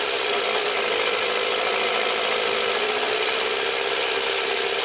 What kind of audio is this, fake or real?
real